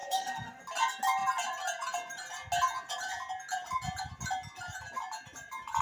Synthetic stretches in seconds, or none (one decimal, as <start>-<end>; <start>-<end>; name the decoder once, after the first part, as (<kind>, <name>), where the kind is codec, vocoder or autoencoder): 0.0-0.6 (codec, SNAC)